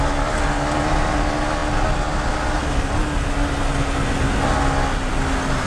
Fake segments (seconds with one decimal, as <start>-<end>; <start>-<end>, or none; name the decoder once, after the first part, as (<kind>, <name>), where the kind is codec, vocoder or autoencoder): none

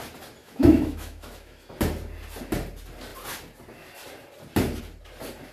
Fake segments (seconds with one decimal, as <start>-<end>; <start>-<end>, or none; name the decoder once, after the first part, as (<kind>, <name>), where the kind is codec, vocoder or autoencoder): 0.4-1.7 (autoencoder, DAC-VAE)

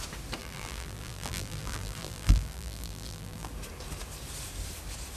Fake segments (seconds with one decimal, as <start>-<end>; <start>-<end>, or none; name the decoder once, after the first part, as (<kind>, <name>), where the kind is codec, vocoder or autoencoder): 0.4-3.5 (vocoder, BigVGAN v2)

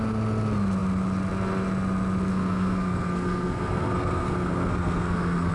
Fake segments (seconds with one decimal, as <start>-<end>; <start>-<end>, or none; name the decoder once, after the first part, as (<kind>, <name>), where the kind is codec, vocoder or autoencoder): 2.3-5.5 (codec, SNAC)